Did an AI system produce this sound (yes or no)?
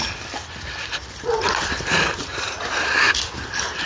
no